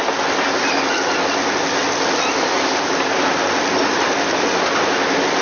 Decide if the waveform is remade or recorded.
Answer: recorded